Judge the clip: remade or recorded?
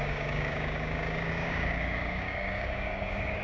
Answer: remade